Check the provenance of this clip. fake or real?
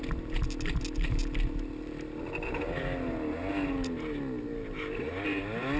real